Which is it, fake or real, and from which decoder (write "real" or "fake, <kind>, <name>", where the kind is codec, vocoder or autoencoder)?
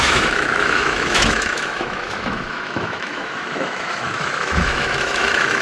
fake, autoencoder, DAC-VAE